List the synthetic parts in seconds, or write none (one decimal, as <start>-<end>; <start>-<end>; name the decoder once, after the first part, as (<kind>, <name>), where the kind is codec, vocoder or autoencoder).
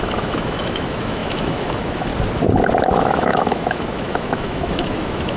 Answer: 0.0-2.1 (autoencoder, DAC-VAE); 2.9-5.4